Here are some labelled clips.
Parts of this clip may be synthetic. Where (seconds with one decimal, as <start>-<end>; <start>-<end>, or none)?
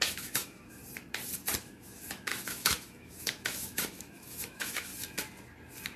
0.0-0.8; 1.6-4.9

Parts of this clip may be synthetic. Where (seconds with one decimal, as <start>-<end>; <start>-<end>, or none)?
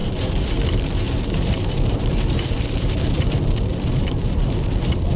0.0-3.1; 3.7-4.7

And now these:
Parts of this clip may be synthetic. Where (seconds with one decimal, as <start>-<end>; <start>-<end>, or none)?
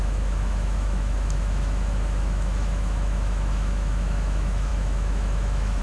0.0-5.8